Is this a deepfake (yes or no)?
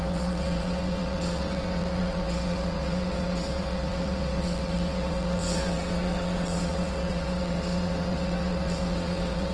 yes